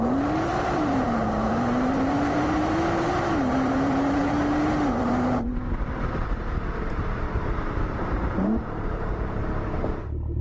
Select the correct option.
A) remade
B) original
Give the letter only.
A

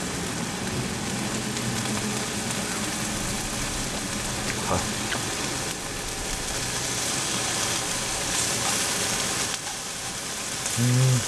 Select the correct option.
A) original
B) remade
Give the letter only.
A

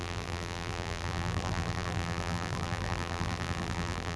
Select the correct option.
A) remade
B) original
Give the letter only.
A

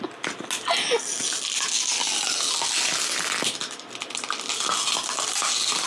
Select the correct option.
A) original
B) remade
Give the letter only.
A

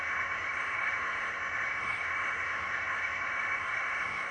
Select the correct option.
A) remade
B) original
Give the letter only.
A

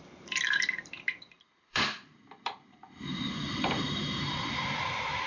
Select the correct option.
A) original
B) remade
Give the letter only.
B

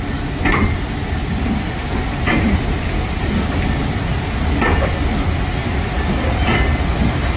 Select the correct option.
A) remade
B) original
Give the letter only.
B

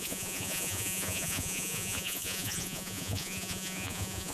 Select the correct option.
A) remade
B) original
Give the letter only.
A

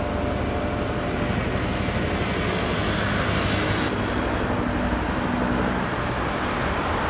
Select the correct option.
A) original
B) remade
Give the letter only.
A